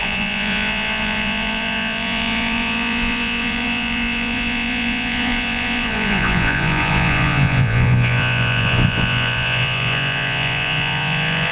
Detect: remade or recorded remade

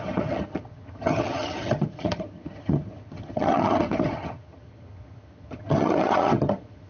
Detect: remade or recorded remade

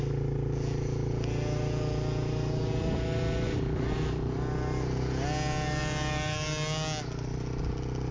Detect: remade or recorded recorded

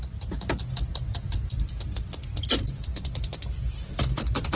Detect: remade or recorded recorded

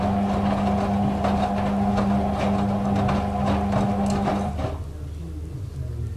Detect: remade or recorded recorded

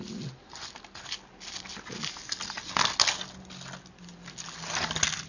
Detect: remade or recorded recorded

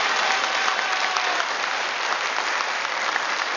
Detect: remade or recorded recorded